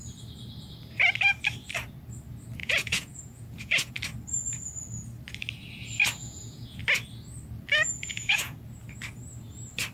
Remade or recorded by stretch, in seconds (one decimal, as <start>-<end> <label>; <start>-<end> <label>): 0.0-2.6 recorded; 2.6-3.9 remade; 3.9-6.2 recorded; 6.2-6.8 remade; 6.8-8.0 recorded; 8.0-8.6 remade; 8.6-9.9 recorded